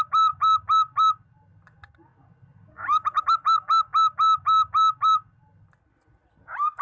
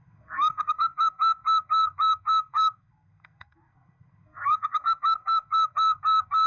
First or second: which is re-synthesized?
second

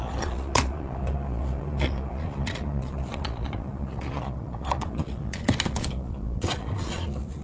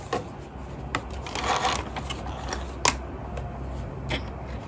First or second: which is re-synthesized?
first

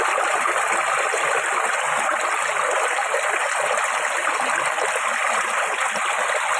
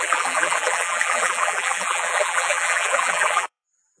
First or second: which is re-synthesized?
second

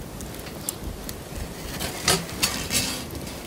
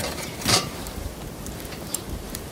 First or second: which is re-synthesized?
second